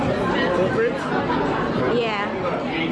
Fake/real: real